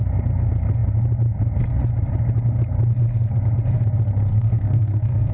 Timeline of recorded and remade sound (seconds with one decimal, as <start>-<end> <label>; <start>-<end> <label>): 0.0-4.3 recorded; 4.3-5.3 remade